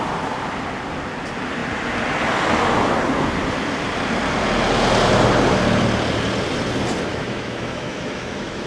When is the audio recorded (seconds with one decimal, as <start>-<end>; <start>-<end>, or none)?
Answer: 0.0-7.1